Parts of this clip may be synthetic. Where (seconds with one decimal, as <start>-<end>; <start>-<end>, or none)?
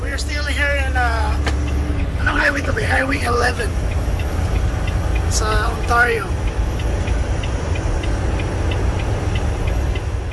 2.0-3.5